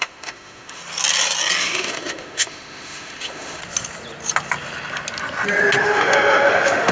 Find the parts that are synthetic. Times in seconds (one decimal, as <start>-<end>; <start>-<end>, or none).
0.0-0.8; 1.6-3.6; 5.8-6.9